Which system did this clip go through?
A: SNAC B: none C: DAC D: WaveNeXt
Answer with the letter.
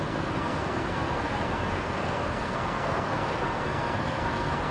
A